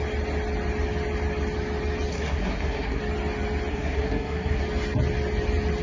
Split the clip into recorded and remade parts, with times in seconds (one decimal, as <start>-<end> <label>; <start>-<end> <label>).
0.0-2.1 recorded; 2.1-3.0 remade; 3.0-3.7 recorded; 3.7-4.6 remade; 4.6-5.8 recorded